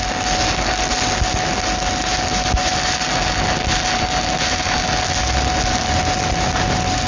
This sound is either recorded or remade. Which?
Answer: recorded